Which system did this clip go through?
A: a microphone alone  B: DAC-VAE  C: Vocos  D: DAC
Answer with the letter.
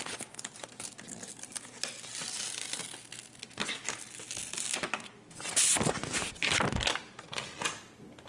A